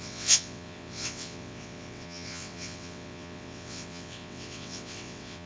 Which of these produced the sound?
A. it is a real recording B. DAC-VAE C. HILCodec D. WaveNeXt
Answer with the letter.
D